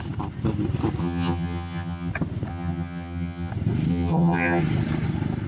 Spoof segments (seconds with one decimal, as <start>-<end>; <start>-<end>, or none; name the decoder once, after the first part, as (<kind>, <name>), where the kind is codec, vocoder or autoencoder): 1.0-2.1 (vocoder, HiFi-GAN); 2.5-3.5; 3.9-4.6